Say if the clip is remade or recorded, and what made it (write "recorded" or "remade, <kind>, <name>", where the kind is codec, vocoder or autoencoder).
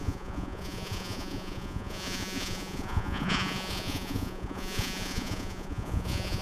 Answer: remade, vocoder, Vocos